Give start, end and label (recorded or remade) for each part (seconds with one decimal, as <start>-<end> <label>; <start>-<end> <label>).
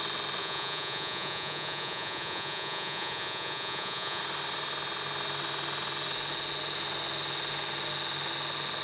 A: 0.0-0.4 recorded; 0.4-4.2 remade; 4.2-8.8 recorded